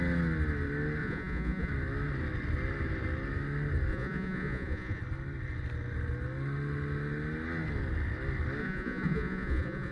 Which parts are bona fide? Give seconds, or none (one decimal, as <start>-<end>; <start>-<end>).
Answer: 0.0-1.0; 1.7-3.9; 5.0-8.6